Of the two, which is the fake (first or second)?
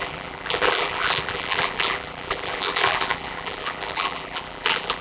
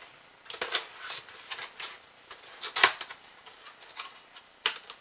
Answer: first